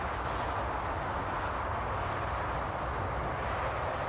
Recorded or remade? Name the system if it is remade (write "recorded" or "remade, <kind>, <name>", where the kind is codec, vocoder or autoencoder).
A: recorded